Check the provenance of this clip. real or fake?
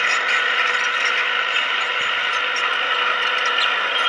real